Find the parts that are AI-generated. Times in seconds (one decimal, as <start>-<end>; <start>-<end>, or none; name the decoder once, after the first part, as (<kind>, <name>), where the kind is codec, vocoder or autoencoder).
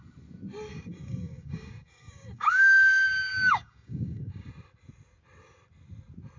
0.7-4.5 (codec, DAC)